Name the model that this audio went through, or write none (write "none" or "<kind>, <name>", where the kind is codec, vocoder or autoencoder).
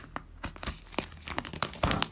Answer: none